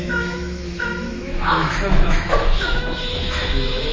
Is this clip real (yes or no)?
no